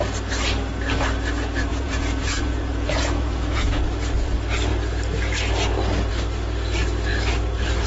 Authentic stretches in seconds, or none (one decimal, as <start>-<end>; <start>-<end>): 0.0-1.7; 3.8-7.9